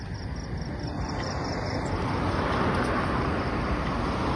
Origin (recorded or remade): recorded